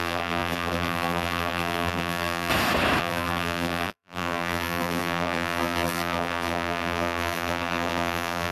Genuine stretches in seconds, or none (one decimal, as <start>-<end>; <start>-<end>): 2.5-3.0